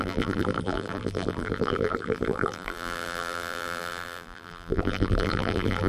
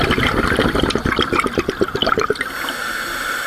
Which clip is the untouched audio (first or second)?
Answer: second